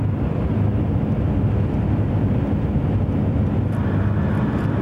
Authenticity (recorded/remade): recorded